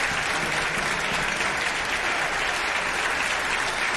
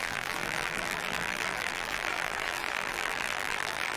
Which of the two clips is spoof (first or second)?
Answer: second